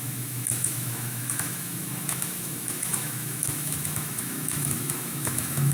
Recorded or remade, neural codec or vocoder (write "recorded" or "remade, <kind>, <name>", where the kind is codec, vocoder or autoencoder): remade, autoencoder, DAC-VAE